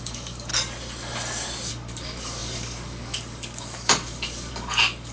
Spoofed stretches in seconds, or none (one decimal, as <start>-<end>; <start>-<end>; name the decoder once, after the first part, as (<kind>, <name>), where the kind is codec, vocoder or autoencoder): 0.0-0.5 (codec, DAC); 1.7-5.1